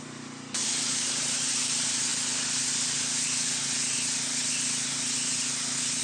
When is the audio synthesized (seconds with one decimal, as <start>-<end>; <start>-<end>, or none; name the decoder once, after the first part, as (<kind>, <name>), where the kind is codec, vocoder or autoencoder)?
0.0-2.1 (vocoder, BigVGAN v2)